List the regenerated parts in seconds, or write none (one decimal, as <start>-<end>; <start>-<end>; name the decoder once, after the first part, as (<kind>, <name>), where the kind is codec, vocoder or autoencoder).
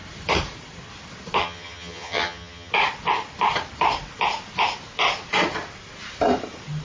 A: 1.4-2.7 (vocoder, HiFi-GAN)